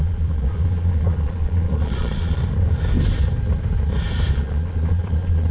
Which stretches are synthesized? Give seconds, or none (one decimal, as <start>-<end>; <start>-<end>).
0.0-2.4; 4.3-5.5

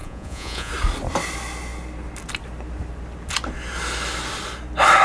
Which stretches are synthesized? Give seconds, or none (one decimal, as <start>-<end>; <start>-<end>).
0.0-0.7

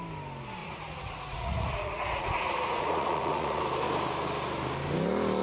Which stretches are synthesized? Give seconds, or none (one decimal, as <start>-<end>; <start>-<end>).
0.6-3.6

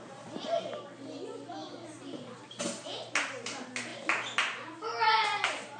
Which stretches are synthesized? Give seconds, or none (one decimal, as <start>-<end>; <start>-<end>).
none

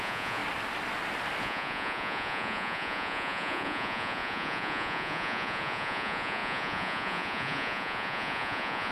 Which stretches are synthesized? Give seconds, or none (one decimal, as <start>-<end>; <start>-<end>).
0.0-0.4; 1.4-8.9

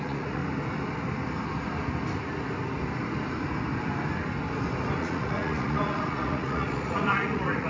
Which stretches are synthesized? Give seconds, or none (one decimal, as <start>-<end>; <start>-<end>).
0.0-0.4; 5.0-7.7